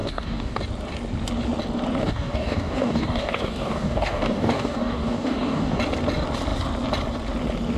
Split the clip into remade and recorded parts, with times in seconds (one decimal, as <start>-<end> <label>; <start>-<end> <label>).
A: 0.0-0.6 remade; 0.6-2.0 recorded; 2.0-5.8 remade; 5.8-7.8 recorded